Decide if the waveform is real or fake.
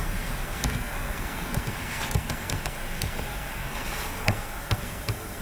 fake